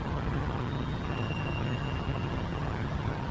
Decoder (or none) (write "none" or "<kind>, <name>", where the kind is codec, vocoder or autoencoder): vocoder, HiFi-GAN